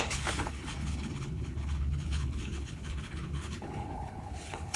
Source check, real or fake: fake